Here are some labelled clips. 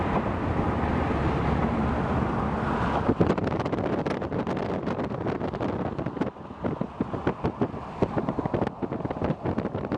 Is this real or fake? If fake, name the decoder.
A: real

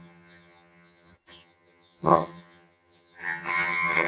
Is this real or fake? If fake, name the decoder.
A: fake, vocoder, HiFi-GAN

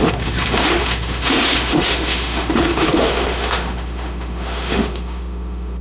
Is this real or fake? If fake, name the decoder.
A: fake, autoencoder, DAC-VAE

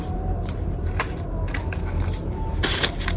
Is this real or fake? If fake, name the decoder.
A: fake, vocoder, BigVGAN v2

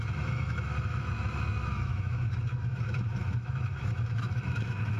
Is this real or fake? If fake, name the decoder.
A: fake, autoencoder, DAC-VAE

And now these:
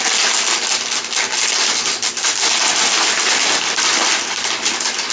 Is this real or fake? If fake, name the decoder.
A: real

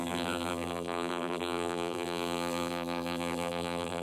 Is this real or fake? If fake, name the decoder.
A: fake, vocoder, BigVGAN v2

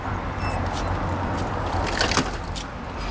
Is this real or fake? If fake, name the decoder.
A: real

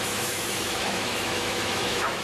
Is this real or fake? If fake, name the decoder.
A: fake, autoencoder, DAC-VAE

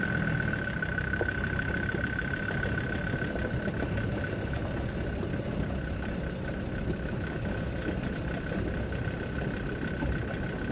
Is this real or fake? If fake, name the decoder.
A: real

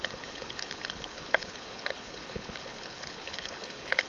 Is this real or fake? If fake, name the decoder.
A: fake, codec, HILCodec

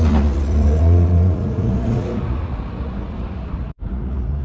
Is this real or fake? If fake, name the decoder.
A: fake, vocoder, Vocos